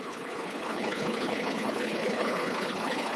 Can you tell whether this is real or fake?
fake